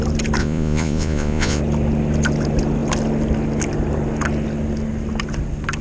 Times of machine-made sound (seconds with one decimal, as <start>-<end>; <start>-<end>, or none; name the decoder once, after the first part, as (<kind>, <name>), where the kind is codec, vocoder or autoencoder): 0.4-1.6 (vocoder, Vocos)